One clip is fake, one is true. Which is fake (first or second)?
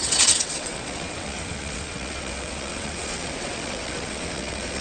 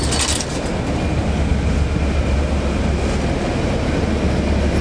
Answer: first